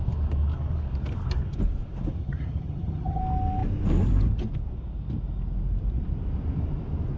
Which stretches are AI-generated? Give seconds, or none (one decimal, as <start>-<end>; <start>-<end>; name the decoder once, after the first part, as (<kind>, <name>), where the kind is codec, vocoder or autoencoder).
2.2-3.2 (vocoder, HiFi-GAN)